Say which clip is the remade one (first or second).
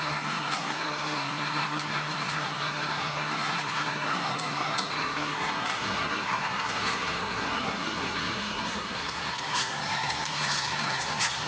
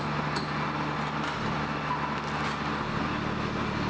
first